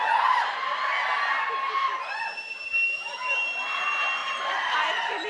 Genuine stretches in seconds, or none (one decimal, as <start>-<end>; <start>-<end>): 0.0-5.3